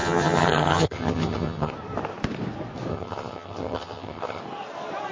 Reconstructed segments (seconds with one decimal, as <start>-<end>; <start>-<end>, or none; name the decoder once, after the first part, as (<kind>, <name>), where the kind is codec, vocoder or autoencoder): 0.0-1.7 (vocoder, HiFi-GAN); 2.9-4.4